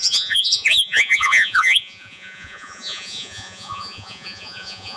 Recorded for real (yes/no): no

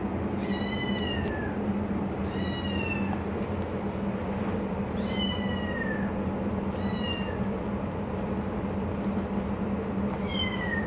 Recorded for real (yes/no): yes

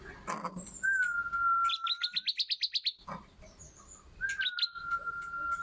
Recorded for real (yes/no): yes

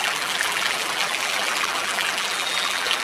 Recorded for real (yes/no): no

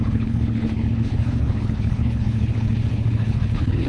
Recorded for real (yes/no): no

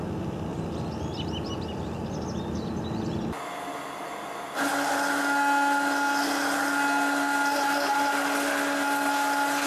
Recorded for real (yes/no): yes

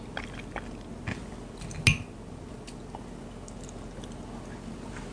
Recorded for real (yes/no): yes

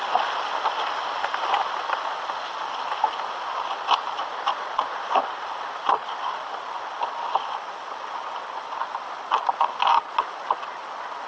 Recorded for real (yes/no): yes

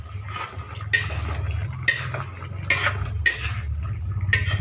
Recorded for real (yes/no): yes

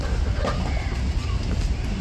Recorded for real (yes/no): yes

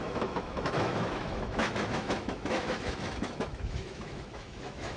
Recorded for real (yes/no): no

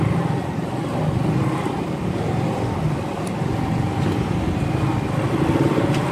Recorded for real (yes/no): yes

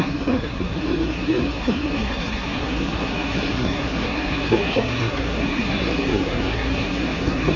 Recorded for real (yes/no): no